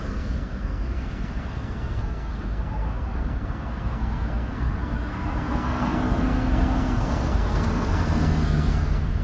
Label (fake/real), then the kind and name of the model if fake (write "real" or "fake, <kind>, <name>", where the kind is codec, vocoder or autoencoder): fake, codec, SNAC